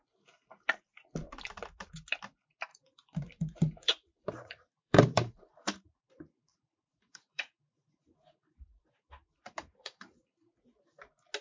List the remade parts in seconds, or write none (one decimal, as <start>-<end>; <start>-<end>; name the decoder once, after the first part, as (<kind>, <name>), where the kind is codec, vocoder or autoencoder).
2.7-6.1 (vocoder, BigVGAN v2); 6.5-10.2